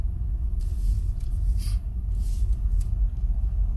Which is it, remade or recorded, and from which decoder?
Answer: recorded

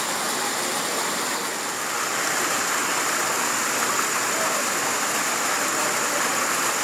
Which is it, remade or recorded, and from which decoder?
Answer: recorded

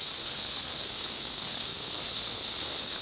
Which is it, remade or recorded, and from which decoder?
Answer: remade, codec, SNAC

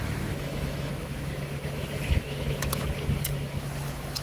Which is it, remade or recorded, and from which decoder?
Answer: remade, autoencoder, DAC-VAE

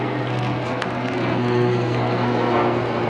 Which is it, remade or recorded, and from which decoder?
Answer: remade, codec, SNAC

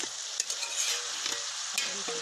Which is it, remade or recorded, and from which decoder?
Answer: recorded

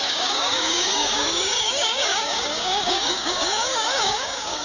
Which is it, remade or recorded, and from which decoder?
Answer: remade, codec, DAC